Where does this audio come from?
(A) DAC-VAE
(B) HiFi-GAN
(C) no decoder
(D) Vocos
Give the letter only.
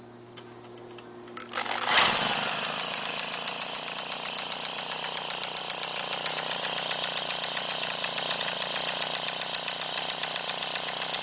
C